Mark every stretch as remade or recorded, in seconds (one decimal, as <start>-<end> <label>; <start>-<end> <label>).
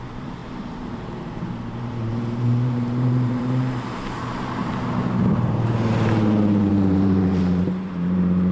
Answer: 0.0-8.5 remade